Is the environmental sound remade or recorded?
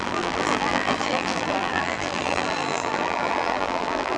remade